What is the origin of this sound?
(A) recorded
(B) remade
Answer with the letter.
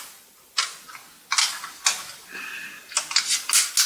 A